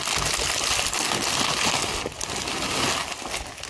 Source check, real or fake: real